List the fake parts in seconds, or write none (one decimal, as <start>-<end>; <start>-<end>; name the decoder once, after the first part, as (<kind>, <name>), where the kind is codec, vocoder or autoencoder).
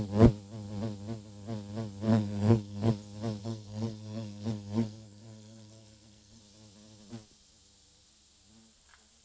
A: 2.1-2.9 (codec, SNAC); 3.4-6.4